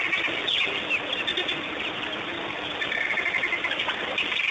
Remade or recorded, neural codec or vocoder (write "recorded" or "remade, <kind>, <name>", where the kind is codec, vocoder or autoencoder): recorded